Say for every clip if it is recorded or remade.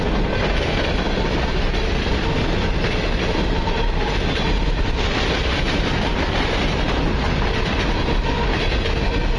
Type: recorded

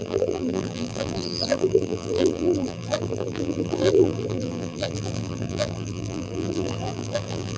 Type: remade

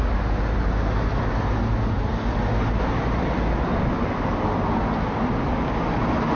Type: recorded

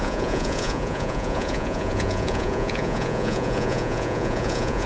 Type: remade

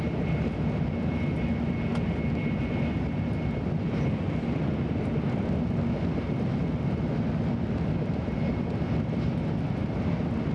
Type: recorded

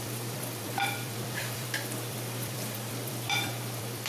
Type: remade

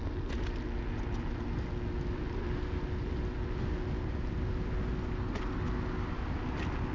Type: recorded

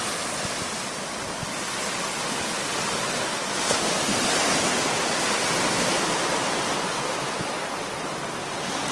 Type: recorded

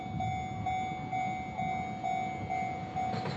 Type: recorded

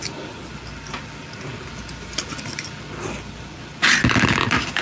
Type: recorded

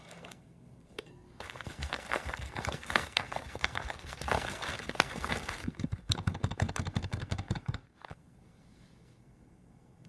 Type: remade